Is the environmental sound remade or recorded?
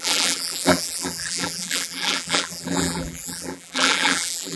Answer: remade